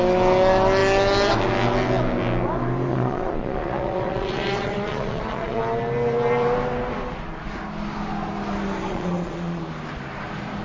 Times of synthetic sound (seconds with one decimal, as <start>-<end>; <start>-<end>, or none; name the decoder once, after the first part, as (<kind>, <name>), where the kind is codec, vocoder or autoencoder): 2.9-5.6 (vocoder, Vocos); 8.9-9.6